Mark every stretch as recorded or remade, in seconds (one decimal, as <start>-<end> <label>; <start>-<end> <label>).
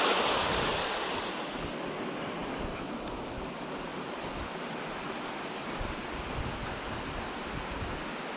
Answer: 0.0-2.4 recorded; 2.4-3.1 remade; 3.1-8.4 recorded